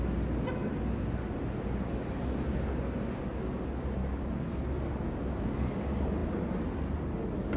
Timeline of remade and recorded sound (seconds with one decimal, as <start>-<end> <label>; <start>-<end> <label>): 0.0-4.0 recorded; 4.0-4.6 remade; 4.6-7.6 recorded